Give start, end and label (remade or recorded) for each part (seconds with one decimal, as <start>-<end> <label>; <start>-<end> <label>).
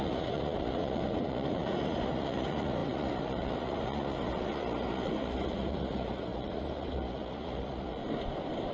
0.0-8.0 remade; 8.0-8.7 recorded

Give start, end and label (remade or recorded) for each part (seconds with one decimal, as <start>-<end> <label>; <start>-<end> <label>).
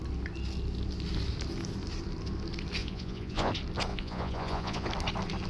0.0-2.8 recorded; 2.8-3.5 remade; 3.5-3.9 recorded; 3.9-4.9 remade; 4.9-5.5 recorded